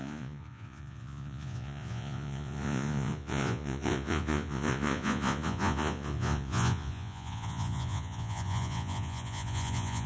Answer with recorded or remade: remade